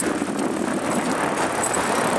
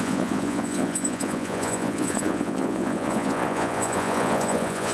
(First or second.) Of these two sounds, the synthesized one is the second